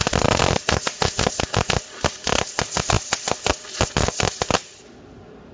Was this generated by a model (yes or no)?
no